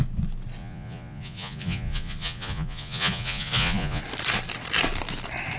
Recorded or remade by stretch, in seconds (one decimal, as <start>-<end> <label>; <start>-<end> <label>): 0.0-0.6 recorded; 0.6-4.0 remade; 4.0-5.6 recorded